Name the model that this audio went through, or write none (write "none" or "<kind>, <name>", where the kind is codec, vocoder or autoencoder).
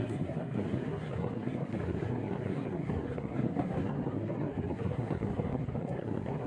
codec, SNAC